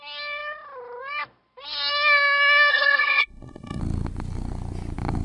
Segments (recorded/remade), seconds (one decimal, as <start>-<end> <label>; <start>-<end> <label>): 0.0-2.7 recorded; 2.7-3.8 remade; 3.8-5.2 recorded